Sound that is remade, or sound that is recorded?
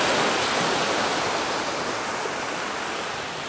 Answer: recorded